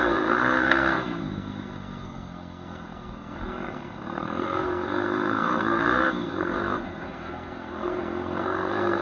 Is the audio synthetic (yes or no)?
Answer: yes